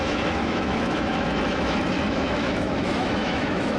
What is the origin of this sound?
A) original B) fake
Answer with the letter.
B